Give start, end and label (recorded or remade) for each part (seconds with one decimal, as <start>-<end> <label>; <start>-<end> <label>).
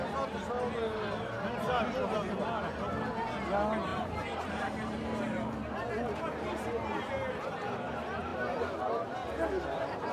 0.0-3.9 recorded; 3.9-7.1 remade; 7.1-10.1 recorded